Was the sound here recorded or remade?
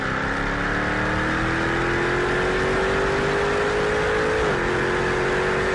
recorded